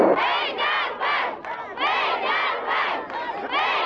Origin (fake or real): real